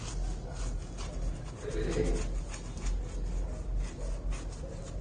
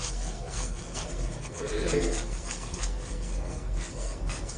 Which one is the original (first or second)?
first